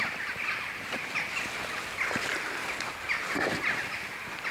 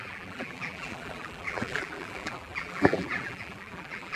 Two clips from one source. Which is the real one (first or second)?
first